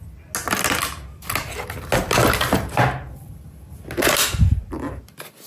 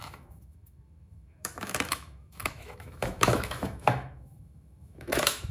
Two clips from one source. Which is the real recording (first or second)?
first